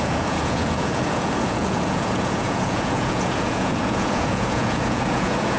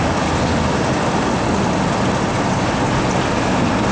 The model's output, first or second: first